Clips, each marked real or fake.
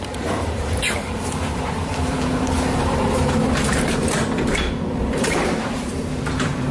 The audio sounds fake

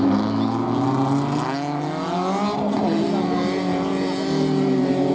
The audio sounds real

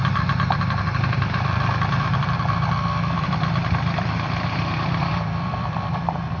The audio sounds fake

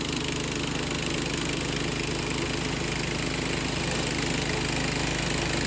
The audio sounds real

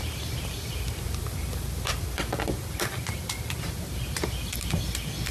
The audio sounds fake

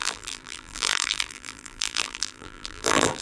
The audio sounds fake